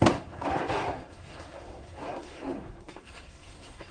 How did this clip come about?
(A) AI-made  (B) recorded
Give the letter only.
A